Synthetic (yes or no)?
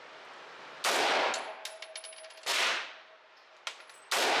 no